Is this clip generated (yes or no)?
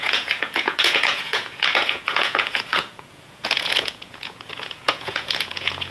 yes